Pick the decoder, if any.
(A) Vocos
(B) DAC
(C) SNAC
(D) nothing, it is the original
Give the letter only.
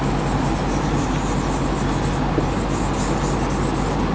D